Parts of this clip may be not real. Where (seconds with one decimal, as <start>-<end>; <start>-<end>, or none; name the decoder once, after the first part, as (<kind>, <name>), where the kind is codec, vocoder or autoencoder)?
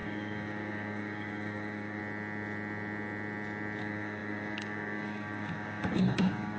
0.0-2.0 (codec, DAC); 3.8-6.6